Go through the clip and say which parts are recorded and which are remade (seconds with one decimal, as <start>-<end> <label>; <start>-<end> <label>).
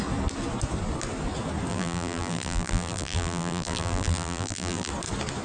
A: 0.0-1.7 recorded; 1.7-4.9 remade; 4.9-5.4 recorded